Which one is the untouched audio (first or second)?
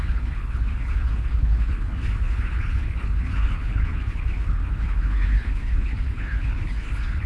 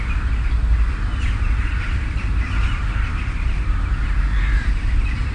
second